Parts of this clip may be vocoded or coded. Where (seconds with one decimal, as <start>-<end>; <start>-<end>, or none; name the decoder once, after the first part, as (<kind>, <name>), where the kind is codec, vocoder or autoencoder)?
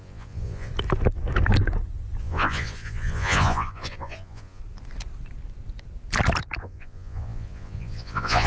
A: 0.0-0.7 (vocoder, Vocos); 2.2-4.6; 6.6-8.5